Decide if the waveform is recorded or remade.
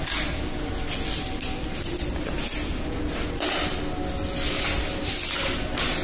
recorded